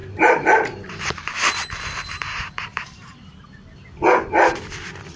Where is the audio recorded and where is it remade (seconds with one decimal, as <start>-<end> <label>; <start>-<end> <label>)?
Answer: 0.0-3.1 remade; 3.1-5.2 recorded